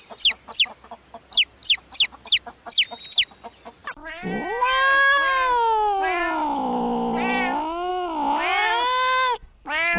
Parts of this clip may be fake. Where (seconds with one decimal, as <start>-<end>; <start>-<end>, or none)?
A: none